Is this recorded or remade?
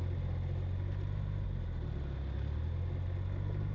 recorded